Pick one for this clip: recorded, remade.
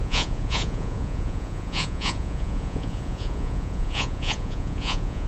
remade